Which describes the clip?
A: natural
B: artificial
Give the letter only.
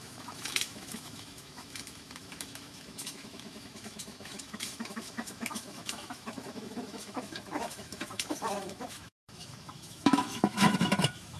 B